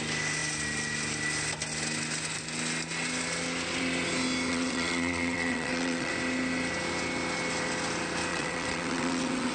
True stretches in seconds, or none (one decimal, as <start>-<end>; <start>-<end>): 0.0-4.5; 6.1-8.3